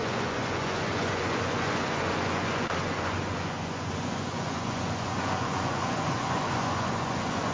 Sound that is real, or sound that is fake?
fake